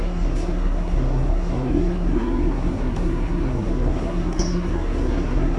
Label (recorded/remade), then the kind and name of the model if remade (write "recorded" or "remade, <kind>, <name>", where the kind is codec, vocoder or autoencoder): remade, codec, SNAC